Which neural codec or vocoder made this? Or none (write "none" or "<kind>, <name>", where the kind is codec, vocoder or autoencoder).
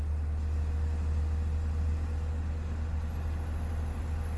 none